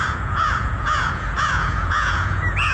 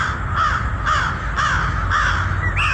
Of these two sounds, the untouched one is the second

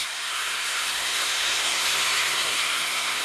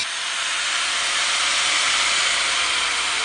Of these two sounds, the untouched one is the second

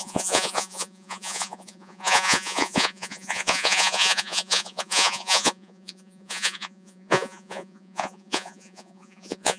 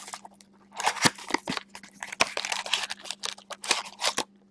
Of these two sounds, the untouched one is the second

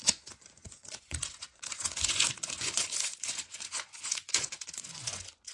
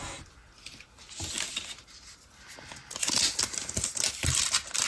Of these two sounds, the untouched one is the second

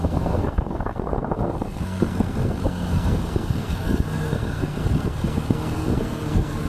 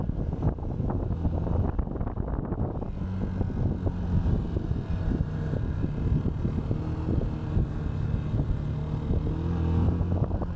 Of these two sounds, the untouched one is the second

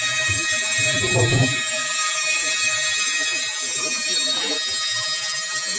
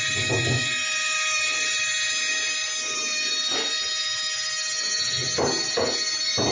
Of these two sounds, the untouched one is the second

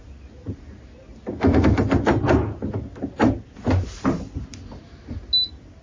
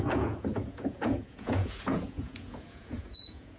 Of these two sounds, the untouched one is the first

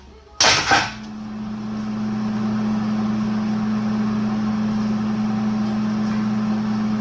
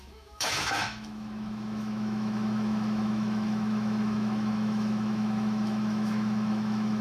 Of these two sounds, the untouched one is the first